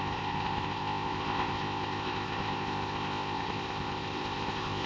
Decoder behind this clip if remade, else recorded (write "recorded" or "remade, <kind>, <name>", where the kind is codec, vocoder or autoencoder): remade, codec, ZipCodec